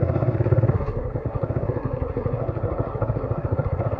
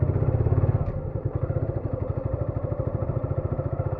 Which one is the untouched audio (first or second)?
second